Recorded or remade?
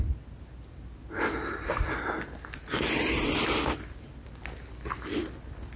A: recorded